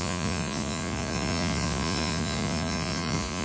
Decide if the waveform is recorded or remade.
remade